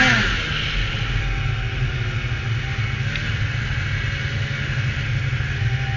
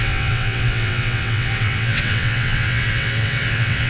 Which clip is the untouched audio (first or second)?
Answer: first